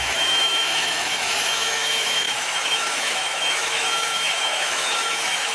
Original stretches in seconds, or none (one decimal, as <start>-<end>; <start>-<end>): none